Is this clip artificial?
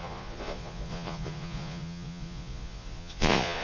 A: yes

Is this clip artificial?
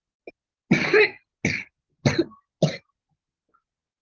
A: no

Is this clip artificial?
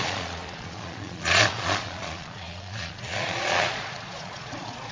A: yes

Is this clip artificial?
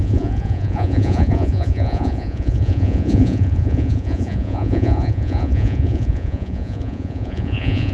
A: yes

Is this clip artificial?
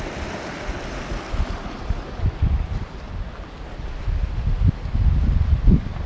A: no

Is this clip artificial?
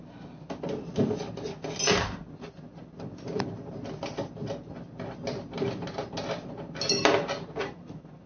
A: no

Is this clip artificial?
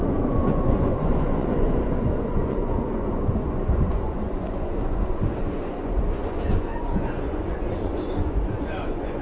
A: yes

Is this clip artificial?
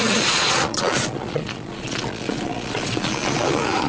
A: yes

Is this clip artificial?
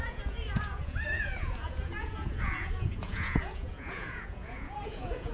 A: yes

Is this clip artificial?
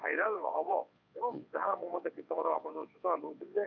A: yes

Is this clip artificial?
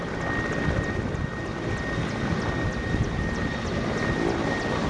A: no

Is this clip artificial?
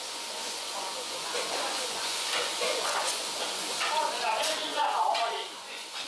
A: yes